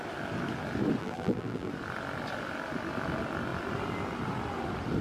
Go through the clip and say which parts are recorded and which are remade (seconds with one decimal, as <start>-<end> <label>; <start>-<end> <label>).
0.0-1.0 recorded; 1.0-1.7 remade; 1.7-5.0 recorded